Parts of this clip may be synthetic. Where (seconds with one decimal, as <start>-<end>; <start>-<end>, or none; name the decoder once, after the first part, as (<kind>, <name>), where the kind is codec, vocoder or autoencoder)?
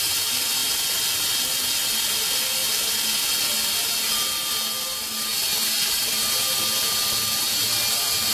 none